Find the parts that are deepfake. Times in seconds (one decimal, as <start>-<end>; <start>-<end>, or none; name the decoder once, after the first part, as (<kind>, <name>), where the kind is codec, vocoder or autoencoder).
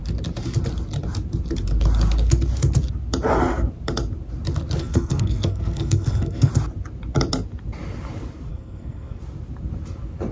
4.8-6.5 (codec, SNAC); 8.5-9.2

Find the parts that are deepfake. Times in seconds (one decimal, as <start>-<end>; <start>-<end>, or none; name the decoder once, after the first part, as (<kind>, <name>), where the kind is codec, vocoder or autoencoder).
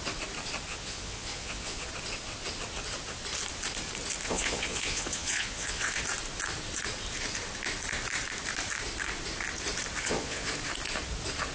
0.7-1.9 (vocoder, Vocos); 4.2-6.0; 10.0-10.5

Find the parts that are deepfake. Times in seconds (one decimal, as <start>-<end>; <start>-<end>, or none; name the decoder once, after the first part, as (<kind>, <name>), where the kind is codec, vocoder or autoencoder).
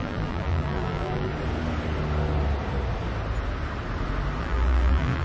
0.0-1.3 (vocoder, BigVGAN v2); 4.4-5.2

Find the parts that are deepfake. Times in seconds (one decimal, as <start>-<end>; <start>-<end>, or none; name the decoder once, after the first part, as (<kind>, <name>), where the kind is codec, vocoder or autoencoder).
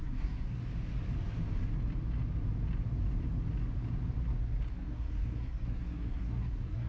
0.0-0.6 (codec, SNAC); 4.7-6.9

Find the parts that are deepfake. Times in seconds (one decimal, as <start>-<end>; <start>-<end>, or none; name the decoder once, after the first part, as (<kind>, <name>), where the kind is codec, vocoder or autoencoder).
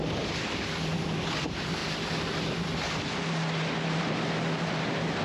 none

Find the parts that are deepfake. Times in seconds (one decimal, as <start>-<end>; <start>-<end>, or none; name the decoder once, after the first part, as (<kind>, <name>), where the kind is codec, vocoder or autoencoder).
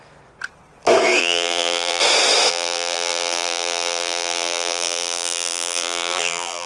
1.2-2.0 (vocoder, BigVGAN v2); 2.5-6.7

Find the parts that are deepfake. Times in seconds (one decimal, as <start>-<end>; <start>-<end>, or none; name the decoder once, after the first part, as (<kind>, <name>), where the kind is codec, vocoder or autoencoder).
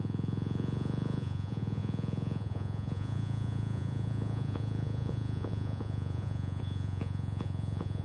0.0-8.0 (vocoder, Vocos)